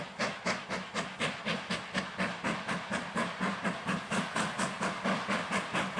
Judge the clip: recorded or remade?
recorded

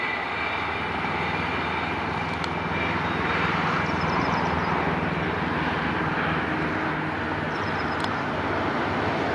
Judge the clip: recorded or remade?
recorded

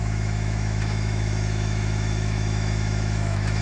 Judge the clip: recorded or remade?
remade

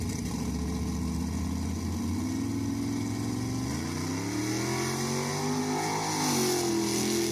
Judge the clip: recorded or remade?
recorded